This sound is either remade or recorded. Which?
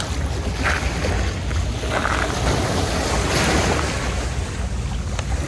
recorded